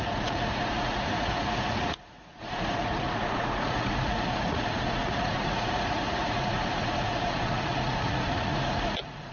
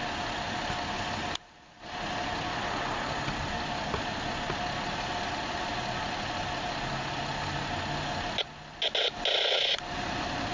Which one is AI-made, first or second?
first